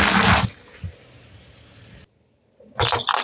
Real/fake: real